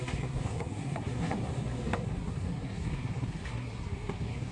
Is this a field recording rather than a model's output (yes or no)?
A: no